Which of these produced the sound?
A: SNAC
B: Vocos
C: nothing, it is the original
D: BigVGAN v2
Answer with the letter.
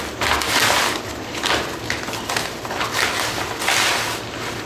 C